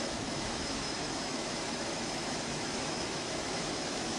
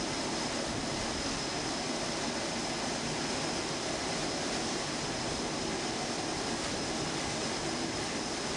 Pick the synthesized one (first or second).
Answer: first